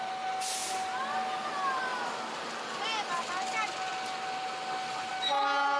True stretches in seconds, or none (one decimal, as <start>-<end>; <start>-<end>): 0.0-5.8